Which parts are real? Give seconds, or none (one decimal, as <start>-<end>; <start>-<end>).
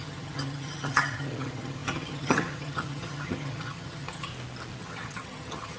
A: 4.3-4.8